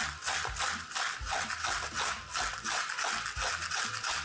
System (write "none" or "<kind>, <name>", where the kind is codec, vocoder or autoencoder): none